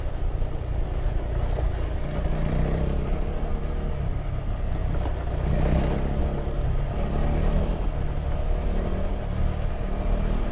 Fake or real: real